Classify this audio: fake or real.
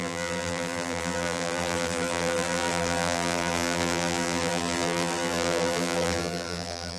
fake